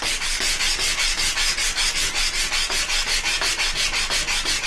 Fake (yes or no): no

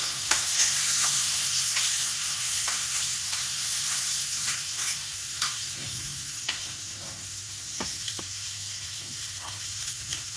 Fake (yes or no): yes